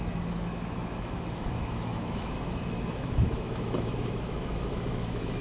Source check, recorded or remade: remade